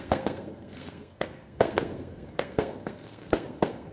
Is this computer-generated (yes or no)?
yes